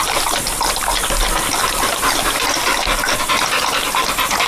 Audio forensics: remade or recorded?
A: recorded